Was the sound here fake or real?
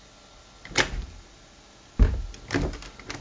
real